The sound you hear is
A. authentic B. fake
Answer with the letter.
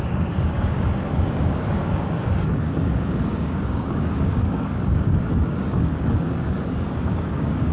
B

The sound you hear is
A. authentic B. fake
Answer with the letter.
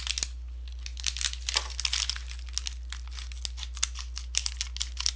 A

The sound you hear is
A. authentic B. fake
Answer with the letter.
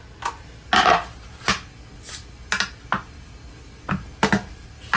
A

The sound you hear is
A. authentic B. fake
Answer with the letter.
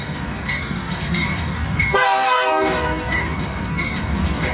B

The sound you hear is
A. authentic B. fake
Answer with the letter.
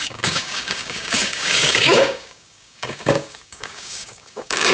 B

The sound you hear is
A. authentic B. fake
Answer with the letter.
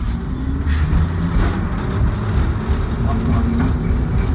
A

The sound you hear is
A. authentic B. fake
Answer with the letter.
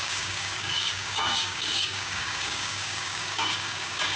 B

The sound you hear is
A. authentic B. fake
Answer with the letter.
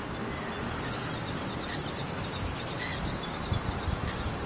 A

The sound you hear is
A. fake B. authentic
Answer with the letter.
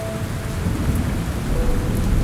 B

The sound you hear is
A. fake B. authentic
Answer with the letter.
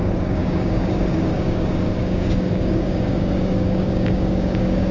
A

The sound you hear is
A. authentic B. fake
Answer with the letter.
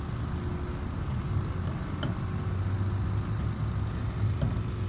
A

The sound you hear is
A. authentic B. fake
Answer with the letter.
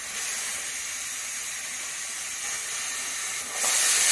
A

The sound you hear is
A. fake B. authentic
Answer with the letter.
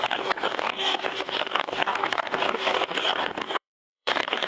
A